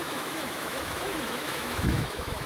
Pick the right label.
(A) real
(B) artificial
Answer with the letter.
B